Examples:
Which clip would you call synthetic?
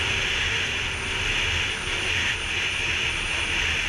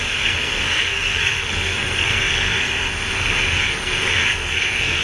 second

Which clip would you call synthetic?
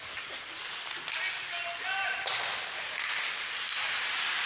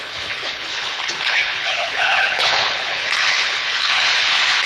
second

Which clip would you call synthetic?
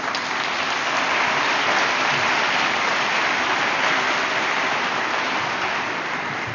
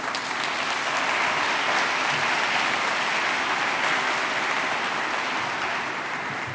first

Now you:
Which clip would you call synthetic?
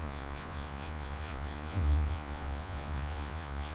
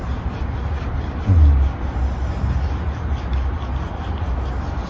first